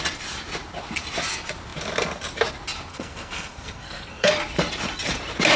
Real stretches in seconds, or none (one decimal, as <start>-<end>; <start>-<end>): 0.0-2.9; 4.3-5.6